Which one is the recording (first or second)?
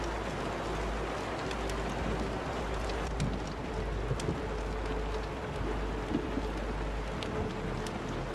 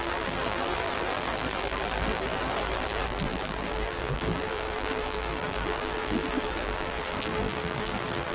first